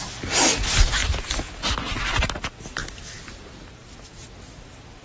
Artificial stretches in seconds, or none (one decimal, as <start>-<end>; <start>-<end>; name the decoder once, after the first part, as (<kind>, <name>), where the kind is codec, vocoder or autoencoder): 2.8-4.1 (vocoder, BigVGAN v2)